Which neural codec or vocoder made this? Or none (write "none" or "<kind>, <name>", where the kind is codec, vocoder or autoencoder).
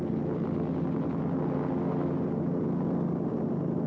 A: none